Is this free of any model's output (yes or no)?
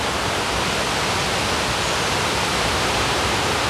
yes